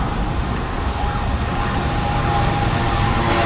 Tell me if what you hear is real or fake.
real